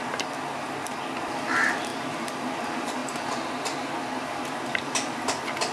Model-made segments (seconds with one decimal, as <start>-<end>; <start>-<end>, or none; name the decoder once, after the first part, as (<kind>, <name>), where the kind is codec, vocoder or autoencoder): none